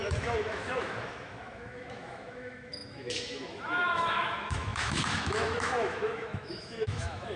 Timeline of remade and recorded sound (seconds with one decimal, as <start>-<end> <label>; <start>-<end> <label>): 0.0-7.4 remade